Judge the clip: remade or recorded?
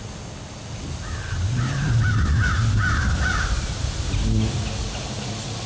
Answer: recorded